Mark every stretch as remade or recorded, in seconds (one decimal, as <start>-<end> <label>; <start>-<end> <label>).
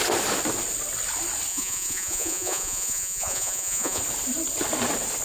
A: 0.0-1.5 recorded; 1.5-4.0 remade; 4.0-5.2 recorded